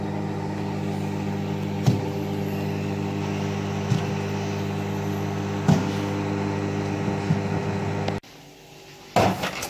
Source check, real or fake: real